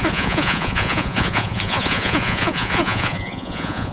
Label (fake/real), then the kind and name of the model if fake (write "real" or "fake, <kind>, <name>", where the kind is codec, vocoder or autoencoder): fake, vocoder, Vocos